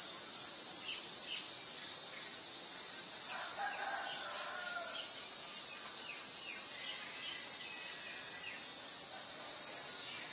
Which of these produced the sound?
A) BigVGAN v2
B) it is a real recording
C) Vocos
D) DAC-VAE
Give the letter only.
B